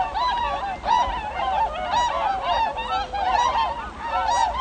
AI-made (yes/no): no